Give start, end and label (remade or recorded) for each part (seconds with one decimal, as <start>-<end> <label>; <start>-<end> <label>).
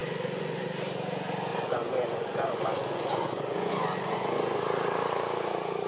0.0-0.7 remade; 0.7-1.5 recorded; 1.5-4.6 remade; 4.6-5.9 recorded